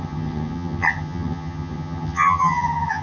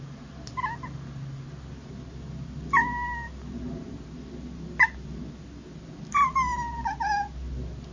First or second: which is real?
second